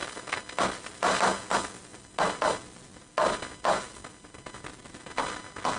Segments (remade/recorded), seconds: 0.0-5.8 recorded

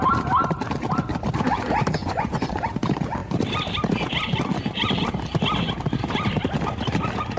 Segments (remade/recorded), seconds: 0.0-2.0 recorded; 2.0-2.6 remade; 2.6-7.4 recorded

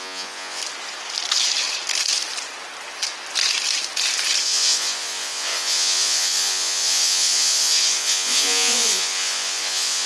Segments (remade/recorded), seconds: 0.0-0.6 remade; 0.6-4.4 recorded; 4.4-10.1 remade